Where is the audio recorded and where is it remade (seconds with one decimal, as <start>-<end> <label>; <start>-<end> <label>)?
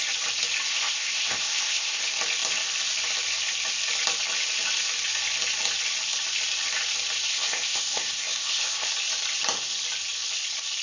0.0-0.7 recorded; 0.7-2.0 remade; 2.0-7.3 recorded; 7.3-8.9 remade; 8.9-10.8 recorded